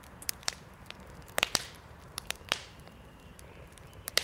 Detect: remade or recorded remade